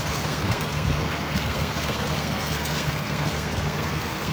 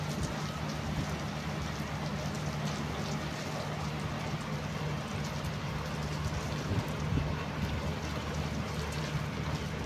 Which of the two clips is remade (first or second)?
first